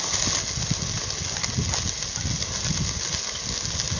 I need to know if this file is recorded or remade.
recorded